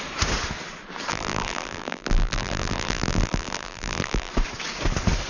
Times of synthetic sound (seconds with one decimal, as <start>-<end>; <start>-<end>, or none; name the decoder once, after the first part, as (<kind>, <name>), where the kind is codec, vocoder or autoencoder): 1.1-4.3 (vocoder, BigVGAN v2)